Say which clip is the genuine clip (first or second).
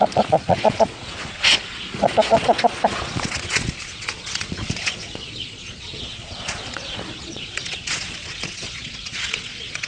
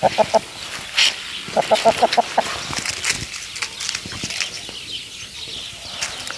second